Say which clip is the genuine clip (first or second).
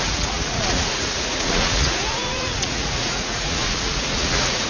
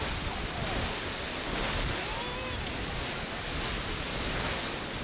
second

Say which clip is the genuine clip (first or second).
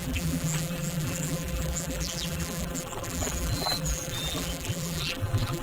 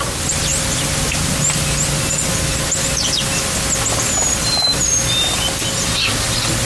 second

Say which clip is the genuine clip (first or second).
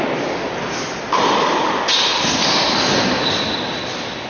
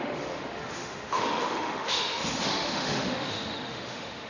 first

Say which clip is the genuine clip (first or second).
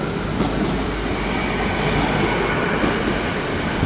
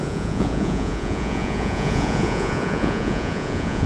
first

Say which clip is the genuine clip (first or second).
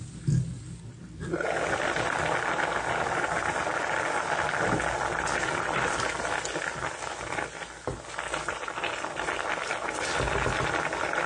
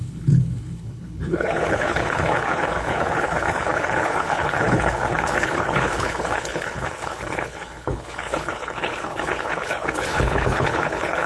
first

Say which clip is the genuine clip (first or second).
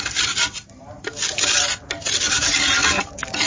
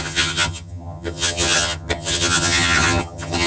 first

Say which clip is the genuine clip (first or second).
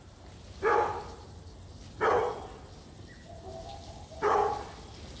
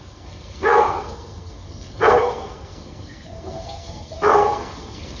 first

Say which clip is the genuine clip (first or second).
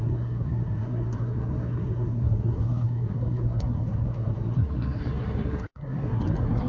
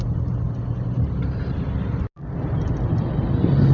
second